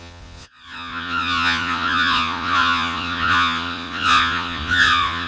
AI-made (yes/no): yes